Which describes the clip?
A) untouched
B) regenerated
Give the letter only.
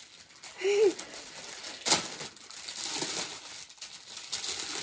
A